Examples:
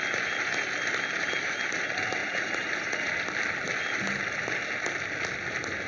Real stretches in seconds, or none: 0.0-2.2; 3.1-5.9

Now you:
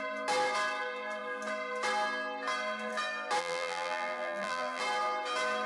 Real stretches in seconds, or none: 0.0-3.4; 4.8-5.7